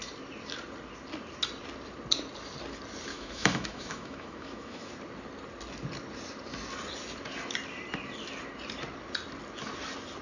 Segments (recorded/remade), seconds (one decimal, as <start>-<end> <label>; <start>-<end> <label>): 0.0-3.1 recorded; 3.1-4.9 remade; 4.9-10.2 recorded